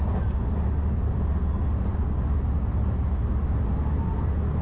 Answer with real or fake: real